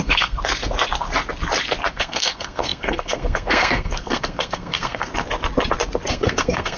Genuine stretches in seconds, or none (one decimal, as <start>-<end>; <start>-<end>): 0.4-1.9; 5.1-6.1